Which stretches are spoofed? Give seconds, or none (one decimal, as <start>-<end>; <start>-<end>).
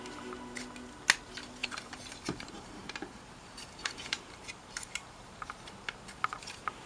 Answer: 1.6-5.7